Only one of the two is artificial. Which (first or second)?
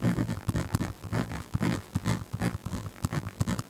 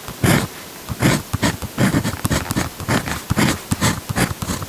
first